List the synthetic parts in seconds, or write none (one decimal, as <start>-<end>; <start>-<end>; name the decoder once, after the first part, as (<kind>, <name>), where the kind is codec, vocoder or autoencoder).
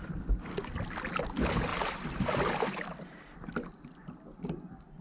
none